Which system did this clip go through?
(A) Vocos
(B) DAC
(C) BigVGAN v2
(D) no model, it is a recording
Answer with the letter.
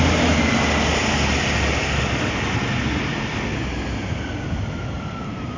D